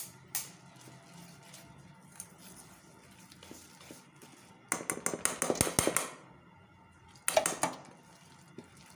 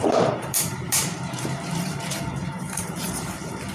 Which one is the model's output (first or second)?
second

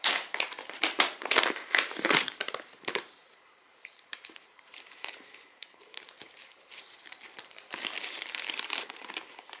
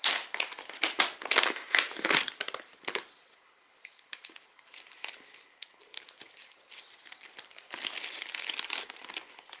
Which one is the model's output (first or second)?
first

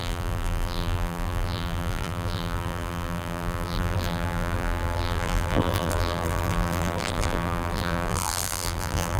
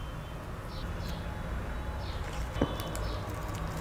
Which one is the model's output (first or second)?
first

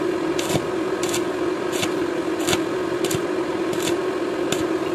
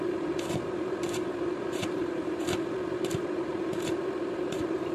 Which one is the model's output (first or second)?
second